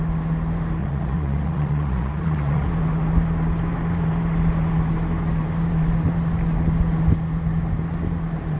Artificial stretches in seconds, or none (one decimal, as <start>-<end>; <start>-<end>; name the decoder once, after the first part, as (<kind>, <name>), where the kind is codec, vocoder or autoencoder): 0.8-2.7 (vocoder, Vocos)